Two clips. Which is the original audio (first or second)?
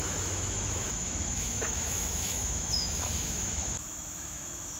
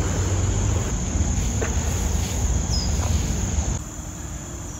second